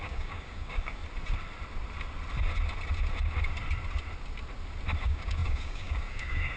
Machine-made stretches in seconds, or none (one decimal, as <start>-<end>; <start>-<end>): 0.0-1.0; 5.0-6.6